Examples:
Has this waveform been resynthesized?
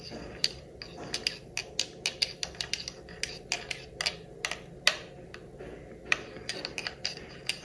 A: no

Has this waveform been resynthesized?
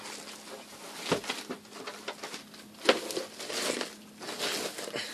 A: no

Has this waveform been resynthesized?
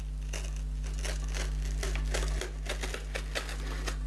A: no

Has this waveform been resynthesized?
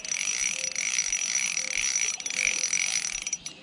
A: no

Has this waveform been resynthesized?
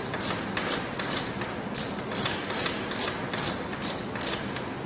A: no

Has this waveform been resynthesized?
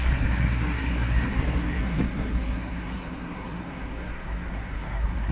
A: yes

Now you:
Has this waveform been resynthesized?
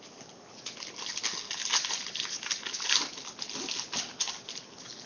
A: no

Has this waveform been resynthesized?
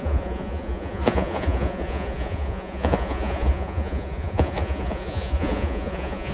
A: yes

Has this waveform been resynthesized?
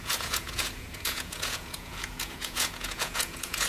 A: yes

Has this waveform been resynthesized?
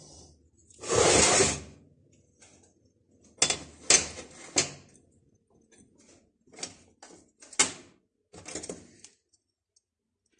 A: no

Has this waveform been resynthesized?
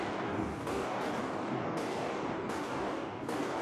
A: yes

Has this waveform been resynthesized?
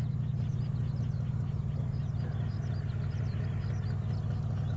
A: no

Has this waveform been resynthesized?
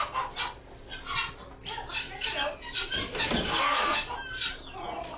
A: no